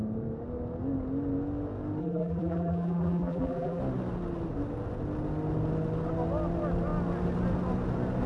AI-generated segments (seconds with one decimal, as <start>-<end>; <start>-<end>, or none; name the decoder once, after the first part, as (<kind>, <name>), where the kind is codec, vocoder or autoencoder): 2.0-3.8 (vocoder, BigVGAN v2)